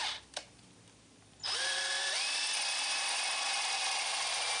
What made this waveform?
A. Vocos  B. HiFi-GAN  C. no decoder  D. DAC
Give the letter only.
C